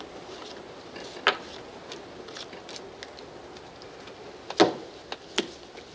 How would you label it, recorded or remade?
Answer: recorded